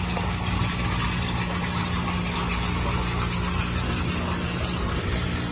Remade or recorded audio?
recorded